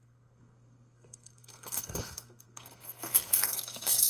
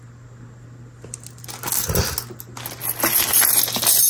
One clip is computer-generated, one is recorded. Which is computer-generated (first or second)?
first